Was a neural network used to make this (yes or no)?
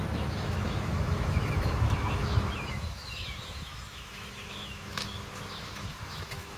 yes